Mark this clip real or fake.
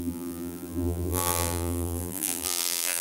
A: fake